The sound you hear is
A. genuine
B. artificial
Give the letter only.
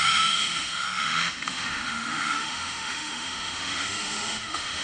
B